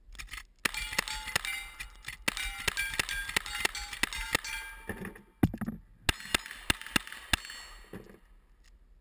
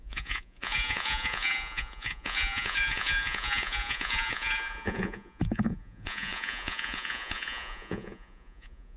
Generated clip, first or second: second